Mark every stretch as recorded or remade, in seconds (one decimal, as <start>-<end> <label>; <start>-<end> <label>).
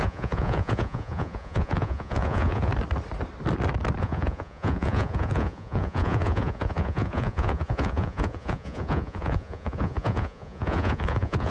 0.0-2.7 remade; 2.7-4.0 recorded; 4.0-11.5 remade